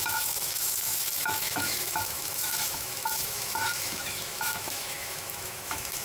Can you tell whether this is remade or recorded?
remade